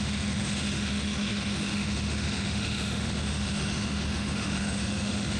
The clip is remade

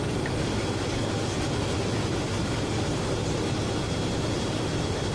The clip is remade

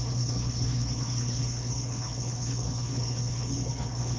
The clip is remade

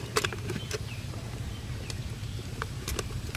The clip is recorded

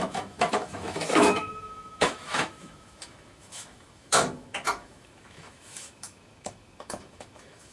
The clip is remade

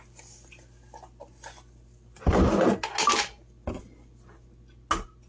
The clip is recorded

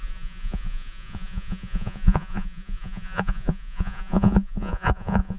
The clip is remade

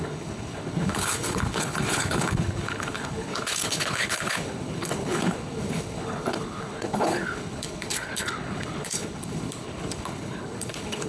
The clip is remade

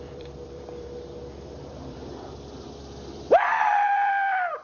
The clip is remade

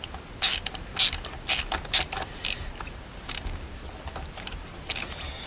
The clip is recorded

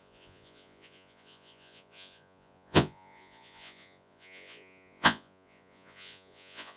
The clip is remade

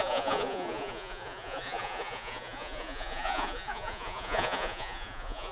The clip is remade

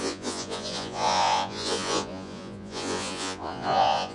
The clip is remade